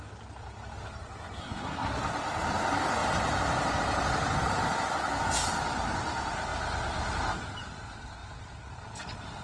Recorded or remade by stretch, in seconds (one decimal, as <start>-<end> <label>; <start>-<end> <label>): 0.0-1.4 recorded; 1.4-2.0 remade; 2.0-9.4 recorded